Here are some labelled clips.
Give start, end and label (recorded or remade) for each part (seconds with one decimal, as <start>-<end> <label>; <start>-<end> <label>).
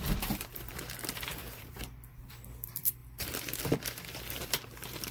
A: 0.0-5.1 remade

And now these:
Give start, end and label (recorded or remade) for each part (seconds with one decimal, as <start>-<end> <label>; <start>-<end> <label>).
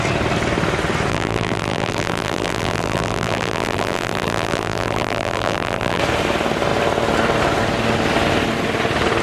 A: 0.0-1.1 recorded; 1.1-6.0 remade; 6.0-9.2 recorded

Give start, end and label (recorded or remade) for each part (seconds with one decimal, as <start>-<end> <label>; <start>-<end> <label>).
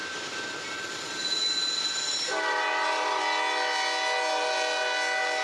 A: 0.0-3.2 remade; 3.2-5.4 recorded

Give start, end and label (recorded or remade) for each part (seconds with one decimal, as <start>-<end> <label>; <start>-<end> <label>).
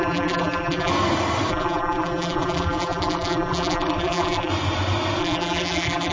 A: 0.0-0.9 remade; 0.9-1.5 recorded; 1.5-4.5 remade; 4.5-5.2 recorded; 5.2-6.1 remade